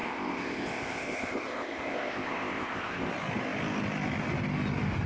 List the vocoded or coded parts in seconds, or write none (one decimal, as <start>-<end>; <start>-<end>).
0.0-3.1